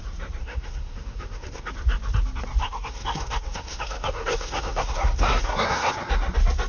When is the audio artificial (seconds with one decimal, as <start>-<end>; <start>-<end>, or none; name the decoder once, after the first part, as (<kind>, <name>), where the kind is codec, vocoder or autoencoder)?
0.4-1.7 (codec, SNAC); 2.6-5.9